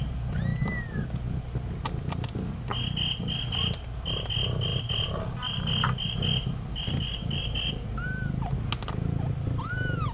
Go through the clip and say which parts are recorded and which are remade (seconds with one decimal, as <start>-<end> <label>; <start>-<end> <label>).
0.0-10.1 recorded